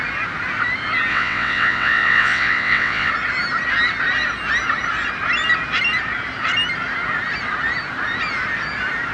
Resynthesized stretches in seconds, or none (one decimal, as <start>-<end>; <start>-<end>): 1.1-3.1